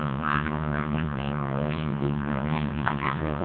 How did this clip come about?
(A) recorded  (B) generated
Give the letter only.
B